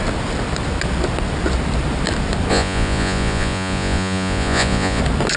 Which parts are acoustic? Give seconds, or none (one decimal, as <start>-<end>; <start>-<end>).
0.0-2.5; 5.0-5.4